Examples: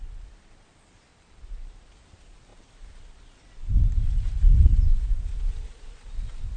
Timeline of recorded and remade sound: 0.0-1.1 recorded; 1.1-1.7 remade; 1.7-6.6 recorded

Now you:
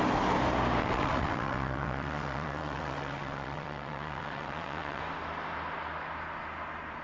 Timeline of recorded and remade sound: 0.0-0.8 recorded; 0.8-5.0 remade; 5.0-7.0 recorded

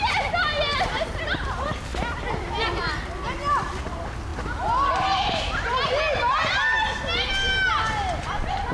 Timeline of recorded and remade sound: 0.0-1.9 recorded; 1.9-2.8 remade; 2.8-8.7 recorded

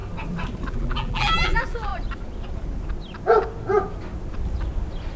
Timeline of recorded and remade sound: 0.0-0.7 recorded; 0.7-1.9 remade; 1.9-5.2 recorded

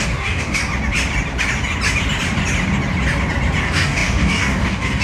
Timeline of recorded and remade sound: 0.0-0.6 remade; 0.6-3.6 recorded; 3.6-5.0 remade

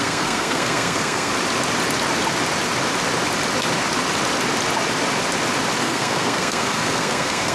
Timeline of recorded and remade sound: 0.0-1.3 remade; 1.3-5.8 recorded; 5.8-7.5 remade

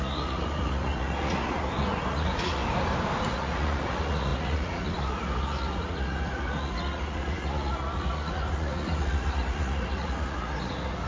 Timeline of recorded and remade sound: 0.0-2.6 remade; 2.6-3.3 recorded; 3.3-11.1 remade